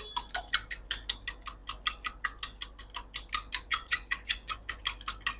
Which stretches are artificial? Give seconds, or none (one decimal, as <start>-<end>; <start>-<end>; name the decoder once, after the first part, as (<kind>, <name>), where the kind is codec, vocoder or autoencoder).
3.7-4.8 (vocoder, Vocos)